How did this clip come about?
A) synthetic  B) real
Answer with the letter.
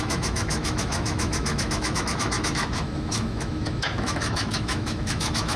A